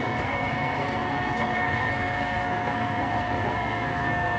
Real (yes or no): no